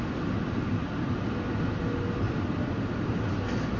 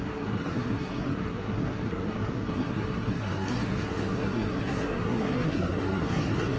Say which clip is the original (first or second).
first